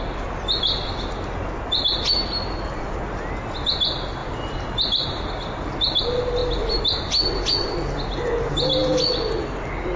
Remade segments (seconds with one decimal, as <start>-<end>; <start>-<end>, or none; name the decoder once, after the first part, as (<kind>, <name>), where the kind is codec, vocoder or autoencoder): none